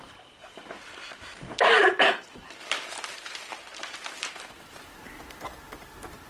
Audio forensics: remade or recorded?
remade